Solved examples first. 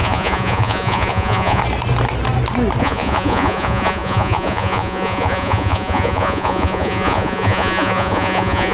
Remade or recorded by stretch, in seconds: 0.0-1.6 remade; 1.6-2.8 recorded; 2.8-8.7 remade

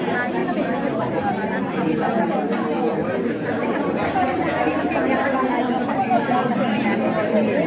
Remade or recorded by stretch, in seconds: 0.0-3.0 recorded; 3.0-7.7 remade

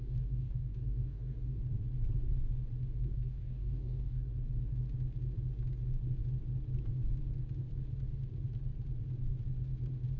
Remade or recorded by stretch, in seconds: 0.0-1.6 remade; 1.6-3.1 recorded; 3.1-4.3 remade; 4.3-10.2 recorded

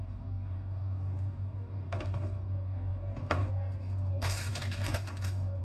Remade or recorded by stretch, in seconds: 0.0-5.6 remade